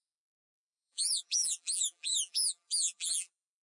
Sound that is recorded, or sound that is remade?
remade